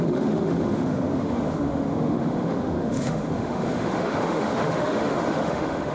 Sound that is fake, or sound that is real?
fake